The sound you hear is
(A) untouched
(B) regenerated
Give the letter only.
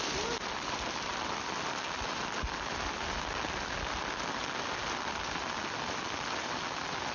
A